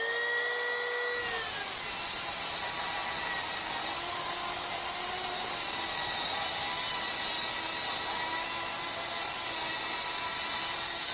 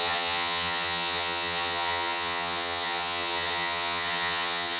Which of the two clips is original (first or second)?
first